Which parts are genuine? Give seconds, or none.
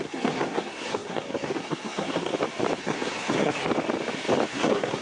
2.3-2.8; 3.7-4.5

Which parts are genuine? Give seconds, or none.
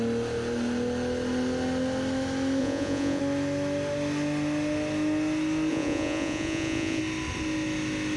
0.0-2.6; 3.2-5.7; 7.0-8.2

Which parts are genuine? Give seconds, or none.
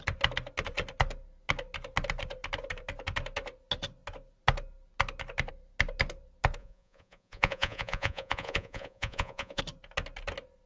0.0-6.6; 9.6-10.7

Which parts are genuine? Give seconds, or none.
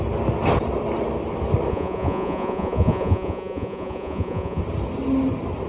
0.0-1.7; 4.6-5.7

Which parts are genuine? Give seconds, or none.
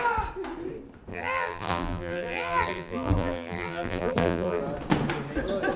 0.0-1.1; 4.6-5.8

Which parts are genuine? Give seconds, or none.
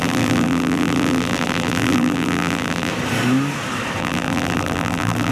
2.9-4.0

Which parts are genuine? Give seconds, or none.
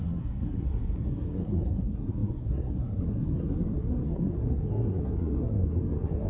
none